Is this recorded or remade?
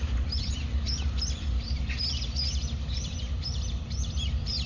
remade